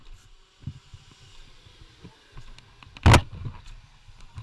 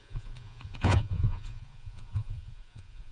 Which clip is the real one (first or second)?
first